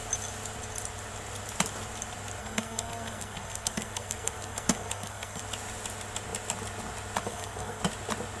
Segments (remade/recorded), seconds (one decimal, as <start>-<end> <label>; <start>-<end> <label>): 0.0-2.4 recorded; 2.4-5.4 remade; 5.4-7.2 recorded; 7.2-7.8 remade; 7.8-8.4 recorded